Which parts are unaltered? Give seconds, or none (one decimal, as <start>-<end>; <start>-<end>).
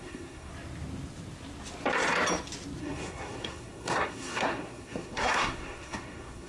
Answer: 0.5-2.8